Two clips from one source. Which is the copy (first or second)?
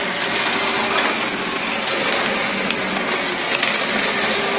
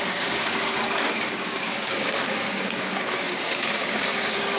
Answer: second